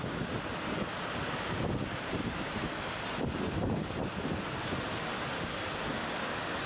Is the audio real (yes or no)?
yes